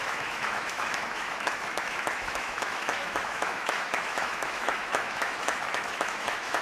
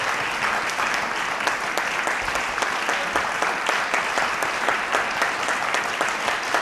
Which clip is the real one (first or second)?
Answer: second